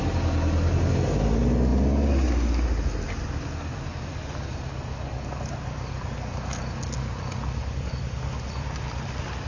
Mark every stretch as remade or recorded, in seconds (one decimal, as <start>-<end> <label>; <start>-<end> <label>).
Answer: 0.0-9.5 recorded